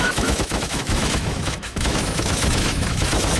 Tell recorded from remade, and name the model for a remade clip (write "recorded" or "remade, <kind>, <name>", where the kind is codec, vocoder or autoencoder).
remade, autoencoder, DAC-VAE